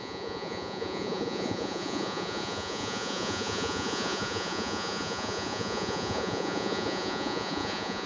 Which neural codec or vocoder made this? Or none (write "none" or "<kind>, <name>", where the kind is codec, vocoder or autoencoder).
vocoder, Vocos